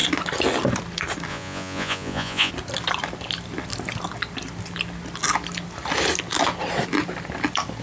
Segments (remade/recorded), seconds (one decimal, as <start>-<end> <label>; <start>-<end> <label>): 0.0-1.3 recorded; 1.3-2.5 remade; 2.5-7.8 recorded